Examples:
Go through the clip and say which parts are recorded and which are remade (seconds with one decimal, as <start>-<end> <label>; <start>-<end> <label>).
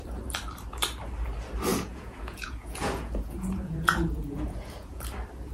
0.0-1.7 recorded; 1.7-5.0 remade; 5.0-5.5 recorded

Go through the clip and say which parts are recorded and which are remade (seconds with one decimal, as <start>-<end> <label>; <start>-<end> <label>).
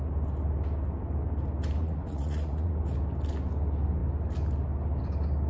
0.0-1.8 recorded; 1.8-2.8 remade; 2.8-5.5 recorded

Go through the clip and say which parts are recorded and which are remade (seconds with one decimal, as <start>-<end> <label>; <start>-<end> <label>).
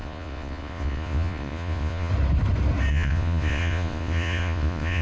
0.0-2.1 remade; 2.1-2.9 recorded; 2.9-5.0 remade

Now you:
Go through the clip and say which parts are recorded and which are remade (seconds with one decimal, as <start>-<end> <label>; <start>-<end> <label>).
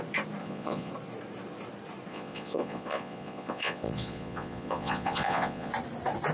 0.0-0.4 recorded; 0.4-0.9 remade; 0.9-2.1 recorded; 2.1-5.7 remade; 5.7-6.3 recorded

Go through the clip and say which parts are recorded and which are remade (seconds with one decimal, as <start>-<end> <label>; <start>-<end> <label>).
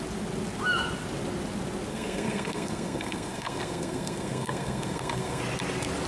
0.0-1.9 recorded; 1.9-5.4 remade; 5.4-6.1 recorded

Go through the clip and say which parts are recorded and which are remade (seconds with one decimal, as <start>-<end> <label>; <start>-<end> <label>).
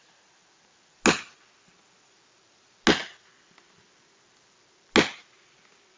0.0-6.0 recorded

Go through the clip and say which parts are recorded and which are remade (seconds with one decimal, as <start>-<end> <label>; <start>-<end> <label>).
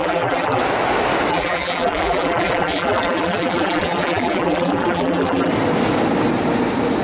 0.0-0.6 remade; 0.6-1.3 recorded; 1.3-5.5 remade; 5.5-7.0 recorded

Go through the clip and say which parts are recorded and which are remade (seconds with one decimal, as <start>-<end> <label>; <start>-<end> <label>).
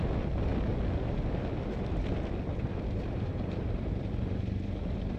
0.0-2.5 recorded; 2.5-4.4 remade; 4.4-5.2 recorded